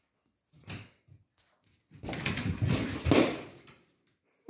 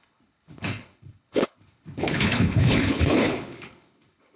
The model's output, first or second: second